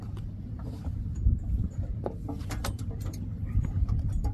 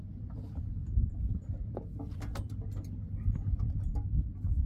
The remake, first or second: first